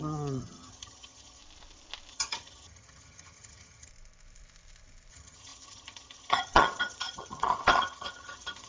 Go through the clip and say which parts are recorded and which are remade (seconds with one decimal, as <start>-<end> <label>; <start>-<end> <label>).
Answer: 0.0-1.4 remade; 1.4-2.1 recorded; 2.1-3.9 remade; 3.9-5.1 recorded; 5.1-8.7 remade